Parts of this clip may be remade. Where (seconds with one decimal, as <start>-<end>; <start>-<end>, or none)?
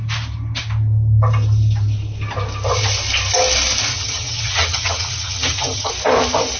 3.9-5.9